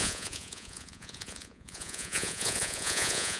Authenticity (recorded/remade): remade